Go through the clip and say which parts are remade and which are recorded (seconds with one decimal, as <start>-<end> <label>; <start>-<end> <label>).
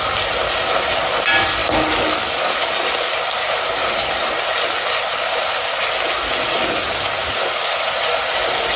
0.0-8.8 recorded